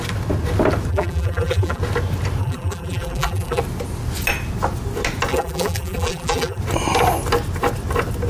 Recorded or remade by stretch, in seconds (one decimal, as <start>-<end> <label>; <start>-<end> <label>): 0.0-0.9 recorded; 0.9-1.8 remade; 1.8-2.4 recorded; 2.4-3.6 remade; 3.6-5.3 recorded; 5.3-6.6 remade; 6.6-8.3 recorded